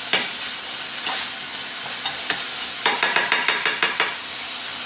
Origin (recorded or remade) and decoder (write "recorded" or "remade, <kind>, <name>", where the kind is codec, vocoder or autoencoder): recorded